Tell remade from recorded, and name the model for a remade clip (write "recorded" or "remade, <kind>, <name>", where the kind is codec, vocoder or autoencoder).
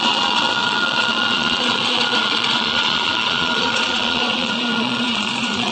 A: remade, vocoder, Vocos